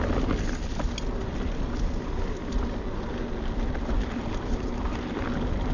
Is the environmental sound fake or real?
real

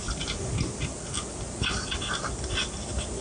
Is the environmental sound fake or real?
real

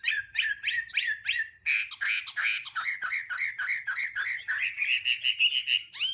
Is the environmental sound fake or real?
real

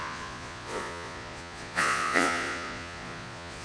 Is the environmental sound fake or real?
fake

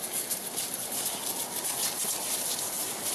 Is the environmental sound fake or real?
real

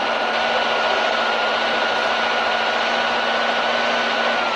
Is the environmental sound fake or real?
real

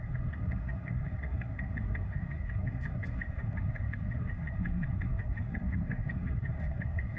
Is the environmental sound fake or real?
fake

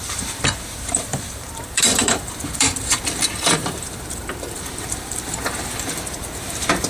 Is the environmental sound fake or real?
fake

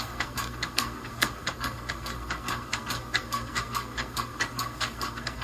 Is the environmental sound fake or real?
fake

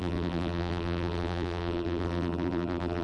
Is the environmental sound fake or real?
fake